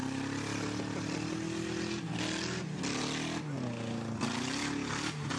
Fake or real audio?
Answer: real